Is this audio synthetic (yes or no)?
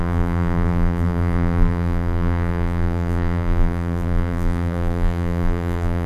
yes